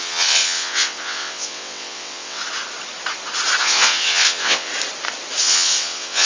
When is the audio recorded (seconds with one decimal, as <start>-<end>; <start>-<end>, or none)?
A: 2.4-3.6; 4.7-5.4